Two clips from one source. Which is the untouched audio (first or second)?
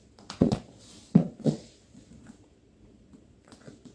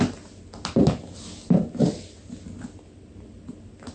second